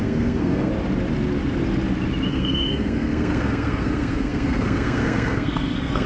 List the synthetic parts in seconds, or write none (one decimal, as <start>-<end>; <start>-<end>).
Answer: 0.0-0.7; 2.3-6.1